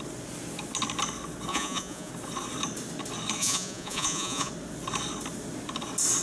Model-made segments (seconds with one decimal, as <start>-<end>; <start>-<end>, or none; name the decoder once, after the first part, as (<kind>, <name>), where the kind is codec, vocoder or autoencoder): 1.5-2.1 (vocoder, Vocos); 3.4-4.5

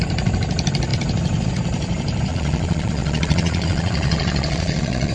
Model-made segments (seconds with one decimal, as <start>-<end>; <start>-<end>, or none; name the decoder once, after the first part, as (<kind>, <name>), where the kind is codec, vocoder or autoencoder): 2.3-5.1 (vocoder, Vocos)

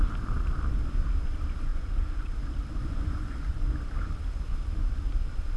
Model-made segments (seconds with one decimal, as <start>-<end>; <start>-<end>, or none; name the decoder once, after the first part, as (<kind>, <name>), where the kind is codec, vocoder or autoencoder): 1.7-2.3 (vocoder, Vocos); 2.8-3.5

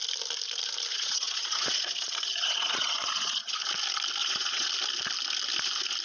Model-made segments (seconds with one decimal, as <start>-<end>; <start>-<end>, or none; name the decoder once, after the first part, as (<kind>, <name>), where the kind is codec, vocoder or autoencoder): 0.9-3.6 (vocoder, Vocos); 4.2-4.7